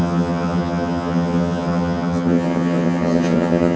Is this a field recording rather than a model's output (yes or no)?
no